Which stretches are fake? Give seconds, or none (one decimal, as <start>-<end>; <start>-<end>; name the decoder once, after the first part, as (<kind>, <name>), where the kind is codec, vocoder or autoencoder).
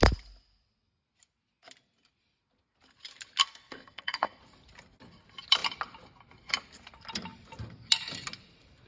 3.4-4.4 (codec, SNAC)